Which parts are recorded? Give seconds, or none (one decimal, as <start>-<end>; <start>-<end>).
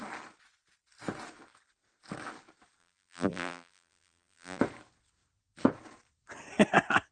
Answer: 0.0-2.8; 4.6-7.1